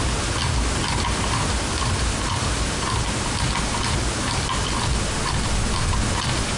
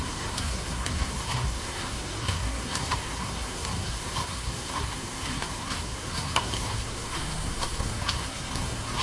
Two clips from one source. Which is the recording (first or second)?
first